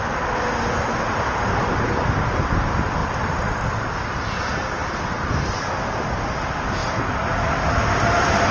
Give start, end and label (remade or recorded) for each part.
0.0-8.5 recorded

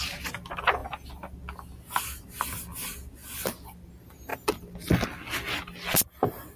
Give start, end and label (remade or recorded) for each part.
0.0-6.6 recorded

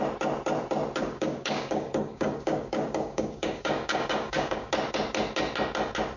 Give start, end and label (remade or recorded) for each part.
0.0-1.0 recorded; 1.0-4.7 remade; 4.7-6.2 recorded

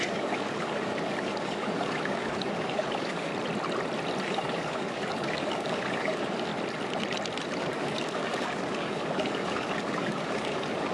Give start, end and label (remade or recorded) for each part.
0.0-3.3 remade; 3.3-4.2 recorded; 4.2-6.5 remade; 6.5-7.6 recorded; 7.6-10.9 remade

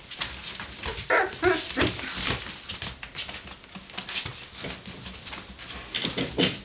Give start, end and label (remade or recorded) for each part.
0.0-6.6 recorded

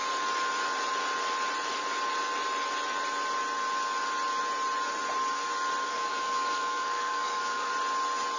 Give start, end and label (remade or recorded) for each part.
0.0-5.8 recorded; 5.8-7.7 remade; 7.7-8.4 recorded